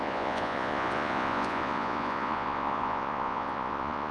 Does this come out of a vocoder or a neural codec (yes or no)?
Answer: yes